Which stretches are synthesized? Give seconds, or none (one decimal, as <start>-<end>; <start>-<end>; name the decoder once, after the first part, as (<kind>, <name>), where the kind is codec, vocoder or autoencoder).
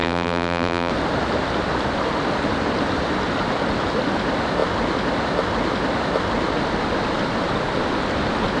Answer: 0.0-0.9 (vocoder, BigVGAN v2)